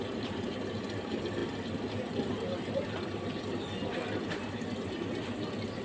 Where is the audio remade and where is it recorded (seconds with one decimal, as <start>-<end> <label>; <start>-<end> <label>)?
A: 0.0-5.8 recorded